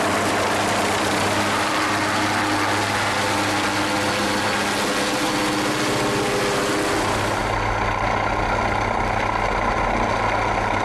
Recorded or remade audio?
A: recorded